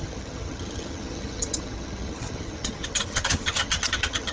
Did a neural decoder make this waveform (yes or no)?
yes